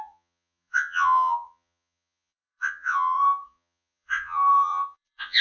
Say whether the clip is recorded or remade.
remade